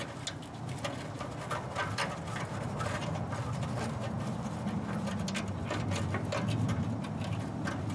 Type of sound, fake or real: real